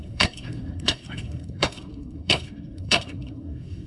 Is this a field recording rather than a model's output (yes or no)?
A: no